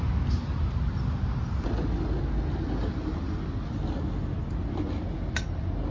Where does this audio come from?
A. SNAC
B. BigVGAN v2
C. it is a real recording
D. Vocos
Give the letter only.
C